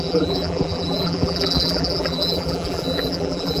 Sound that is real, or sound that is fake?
fake